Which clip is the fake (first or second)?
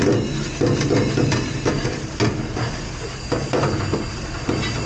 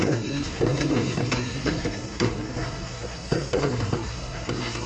second